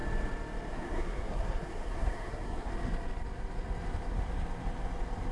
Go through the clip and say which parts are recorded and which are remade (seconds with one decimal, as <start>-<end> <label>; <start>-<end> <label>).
0.0-0.7 recorded; 0.7-2.7 remade; 2.7-5.3 recorded